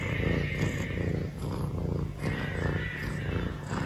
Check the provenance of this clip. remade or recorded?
recorded